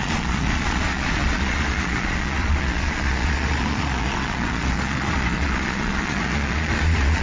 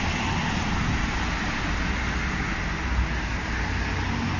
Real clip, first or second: second